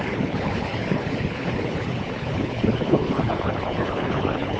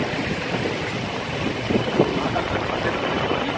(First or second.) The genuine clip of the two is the second